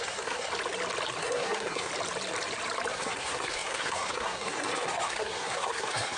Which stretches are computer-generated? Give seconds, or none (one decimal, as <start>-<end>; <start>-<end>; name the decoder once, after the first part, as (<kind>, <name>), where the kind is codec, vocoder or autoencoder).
0.0-0.5 (codec, SNAC); 1.2-1.9; 2.9-6.2